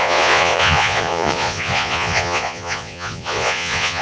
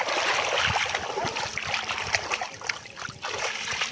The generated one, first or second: first